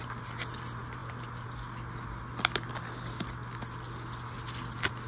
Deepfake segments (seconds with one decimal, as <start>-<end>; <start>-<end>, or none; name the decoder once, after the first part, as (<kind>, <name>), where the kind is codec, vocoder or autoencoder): none

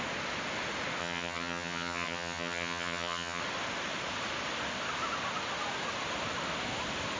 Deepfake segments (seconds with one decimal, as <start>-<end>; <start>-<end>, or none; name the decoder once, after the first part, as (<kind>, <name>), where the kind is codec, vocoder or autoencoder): 1.0-3.4 (vocoder, HiFi-GAN)

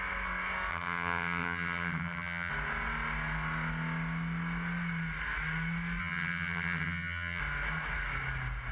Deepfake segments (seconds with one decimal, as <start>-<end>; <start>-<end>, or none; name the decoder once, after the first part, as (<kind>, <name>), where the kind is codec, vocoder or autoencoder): 0.7-2.5 (vocoder, HiFi-GAN); 6.0-7.4

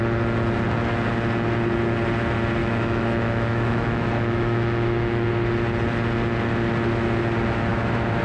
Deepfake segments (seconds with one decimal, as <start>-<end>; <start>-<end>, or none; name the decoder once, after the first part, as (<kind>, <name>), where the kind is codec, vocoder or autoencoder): 2.6-5.3 (autoencoder, DAC-VAE); 7.7-8.2

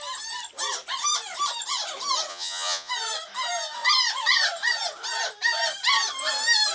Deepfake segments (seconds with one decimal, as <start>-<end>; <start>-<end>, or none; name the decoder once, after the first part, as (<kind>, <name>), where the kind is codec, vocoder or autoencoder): 2.3-2.9 (vocoder, Vocos)

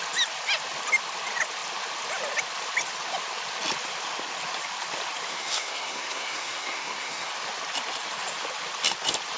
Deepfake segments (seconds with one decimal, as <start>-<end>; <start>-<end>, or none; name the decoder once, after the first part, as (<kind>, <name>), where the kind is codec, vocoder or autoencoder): 5.3-7.3 (codec, SNAC)

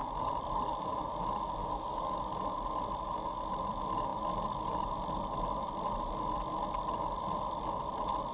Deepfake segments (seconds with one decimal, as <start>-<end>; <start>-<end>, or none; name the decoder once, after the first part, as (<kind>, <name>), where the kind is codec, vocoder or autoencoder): 1.6-2.2 (codec, DAC)

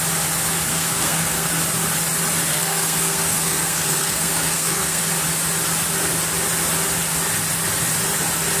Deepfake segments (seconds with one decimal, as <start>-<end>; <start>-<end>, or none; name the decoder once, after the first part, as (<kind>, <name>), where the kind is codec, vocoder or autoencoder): 0.7-1.5 (codec, SNAC); 2.5-5.0